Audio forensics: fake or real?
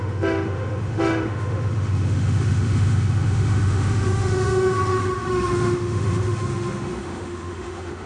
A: fake